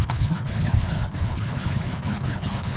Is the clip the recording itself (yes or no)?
no